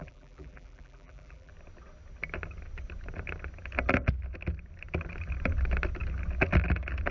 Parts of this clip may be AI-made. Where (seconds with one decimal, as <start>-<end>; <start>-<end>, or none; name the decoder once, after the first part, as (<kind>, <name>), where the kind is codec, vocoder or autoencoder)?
0.0-1.5 (vocoder, BigVGAN v2)